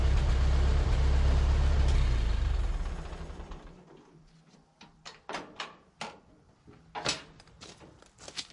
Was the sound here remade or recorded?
recorded